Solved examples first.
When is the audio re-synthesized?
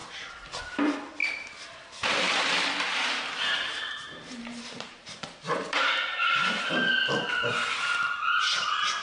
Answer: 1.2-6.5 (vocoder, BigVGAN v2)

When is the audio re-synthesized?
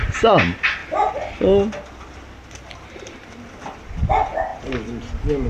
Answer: none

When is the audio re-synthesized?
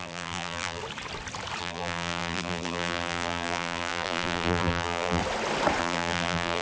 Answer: 0.0-0.8 (vocoder, BigVGAN v2); 1.6-5.2; 5.8-6.6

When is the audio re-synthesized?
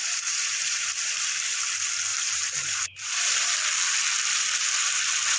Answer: 0.0-1.2 (vocoder, BigVGAN v2); 2.1-4.2